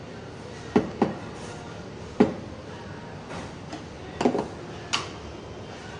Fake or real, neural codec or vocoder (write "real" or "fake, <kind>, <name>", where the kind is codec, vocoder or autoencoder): real